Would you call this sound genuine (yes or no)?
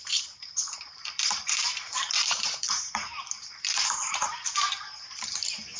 no